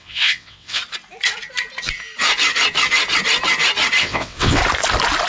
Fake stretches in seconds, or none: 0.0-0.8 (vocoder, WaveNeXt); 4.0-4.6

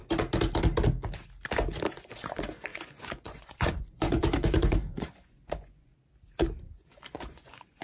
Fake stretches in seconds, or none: 1.9-5.9 (vocoder, Vocos); 6.6-7.8

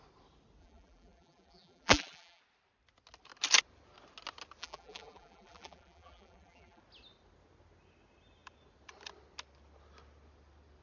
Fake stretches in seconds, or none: 0.6-2.4 (vocoder, BigVGAN v2); 4.6-6.8

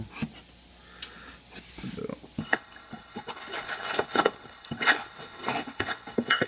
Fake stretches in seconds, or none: 2.4-6.5 (codec, HILCodec)